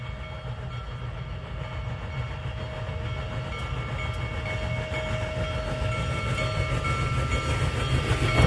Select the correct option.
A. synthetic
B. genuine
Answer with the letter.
B